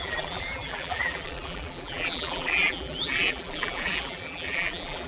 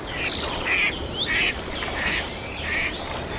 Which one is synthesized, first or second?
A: first